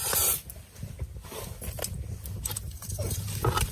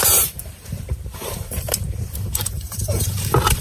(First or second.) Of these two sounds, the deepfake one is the second